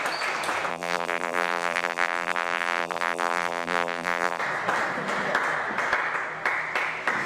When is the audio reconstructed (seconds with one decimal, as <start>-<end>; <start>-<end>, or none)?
0.7-4.4